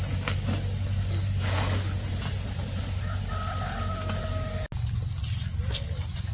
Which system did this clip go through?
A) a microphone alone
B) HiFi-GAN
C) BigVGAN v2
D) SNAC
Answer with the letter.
A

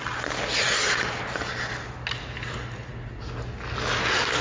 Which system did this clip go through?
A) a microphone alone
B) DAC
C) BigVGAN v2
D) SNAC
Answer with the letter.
A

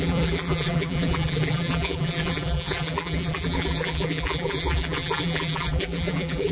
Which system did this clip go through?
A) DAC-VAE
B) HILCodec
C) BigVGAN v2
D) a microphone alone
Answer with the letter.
C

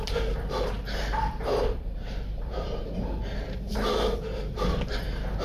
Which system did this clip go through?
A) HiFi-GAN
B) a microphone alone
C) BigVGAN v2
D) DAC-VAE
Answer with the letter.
C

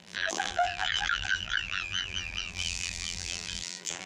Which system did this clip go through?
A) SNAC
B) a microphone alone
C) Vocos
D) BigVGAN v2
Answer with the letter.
D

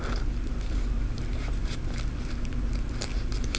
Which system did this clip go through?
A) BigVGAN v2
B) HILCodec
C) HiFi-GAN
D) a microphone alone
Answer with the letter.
A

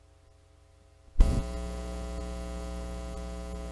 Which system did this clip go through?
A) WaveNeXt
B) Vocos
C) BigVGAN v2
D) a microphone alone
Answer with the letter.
D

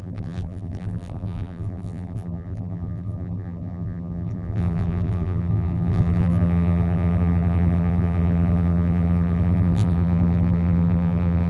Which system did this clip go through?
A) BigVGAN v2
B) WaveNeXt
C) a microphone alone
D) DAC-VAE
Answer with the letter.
A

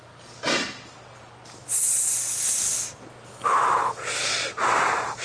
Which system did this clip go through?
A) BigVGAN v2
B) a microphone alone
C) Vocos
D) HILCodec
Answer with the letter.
B